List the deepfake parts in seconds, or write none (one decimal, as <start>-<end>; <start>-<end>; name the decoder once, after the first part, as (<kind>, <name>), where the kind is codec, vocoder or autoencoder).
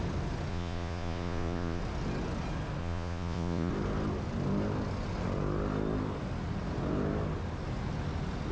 0.5-1.8 (vocoder, Vocos); 2.8-3.7